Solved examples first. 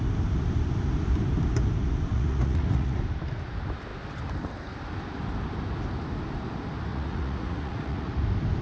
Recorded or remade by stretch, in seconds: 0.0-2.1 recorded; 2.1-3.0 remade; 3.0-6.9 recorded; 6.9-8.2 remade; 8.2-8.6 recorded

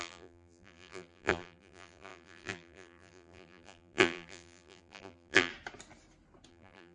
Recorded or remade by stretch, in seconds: 0.0-5.5 remade; 5.5-6.5 recorded; 6.5-6.9 remade

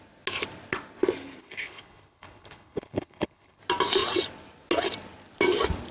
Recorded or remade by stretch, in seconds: 0.0-1.4 recorded; 1.4-3.6 remade; 3.6-5.9 recorded

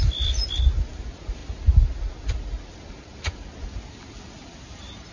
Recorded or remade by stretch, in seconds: 0.0-5.1 recorded